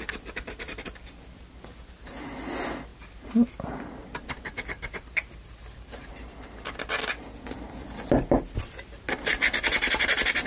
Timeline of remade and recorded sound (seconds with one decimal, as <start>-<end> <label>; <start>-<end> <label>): 0.0-2.9 recorded; 2.9-6.1 remade; 6.1-10.5 recorded